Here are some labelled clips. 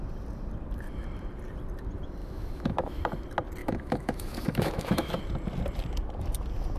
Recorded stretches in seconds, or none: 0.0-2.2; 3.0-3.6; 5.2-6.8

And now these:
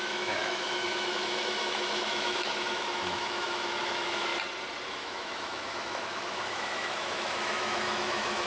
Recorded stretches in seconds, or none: 4.3-4.9

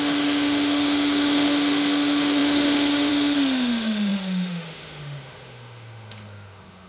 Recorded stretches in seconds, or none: none

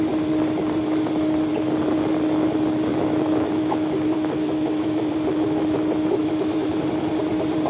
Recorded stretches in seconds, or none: 0.0-2.9; 5.1-6.2; 6.8-7.7

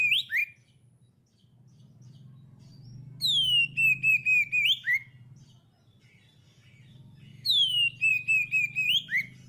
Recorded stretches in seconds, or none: 0.0-9.5

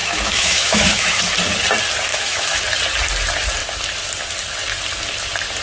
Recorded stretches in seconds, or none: 1.2-2.1; 2.6-5.6

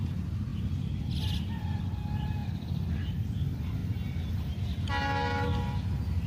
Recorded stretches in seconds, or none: 0.0-6.3

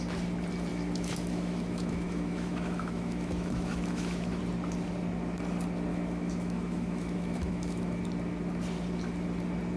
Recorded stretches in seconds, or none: 0.0-0.7; 4.4-5.9; 8.0-9.8